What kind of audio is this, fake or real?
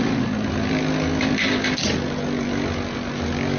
real